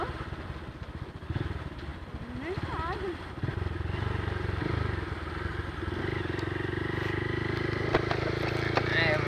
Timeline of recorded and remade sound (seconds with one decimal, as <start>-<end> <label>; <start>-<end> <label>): 0.0-9.3 recorded